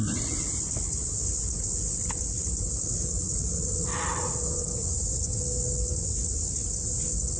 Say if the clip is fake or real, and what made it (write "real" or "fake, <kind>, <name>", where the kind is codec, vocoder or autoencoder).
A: real